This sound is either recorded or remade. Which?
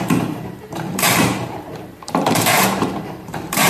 remade